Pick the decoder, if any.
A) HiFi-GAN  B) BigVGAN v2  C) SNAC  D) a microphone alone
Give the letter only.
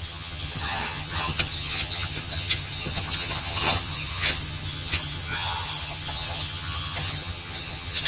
A